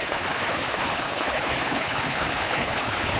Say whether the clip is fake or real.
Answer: fake